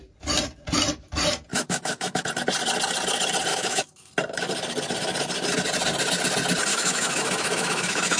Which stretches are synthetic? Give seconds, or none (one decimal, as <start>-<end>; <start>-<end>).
1.5-2.2; 3.5-4.1; 6.7-8.2